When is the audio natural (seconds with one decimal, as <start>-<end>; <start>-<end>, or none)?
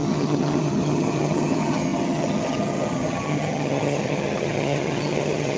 none